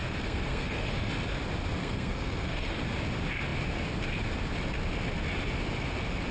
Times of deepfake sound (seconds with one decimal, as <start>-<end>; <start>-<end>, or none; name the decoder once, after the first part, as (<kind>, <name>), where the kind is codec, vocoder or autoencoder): 0.0-1.1 (codec, SNAC); 1.8-2.8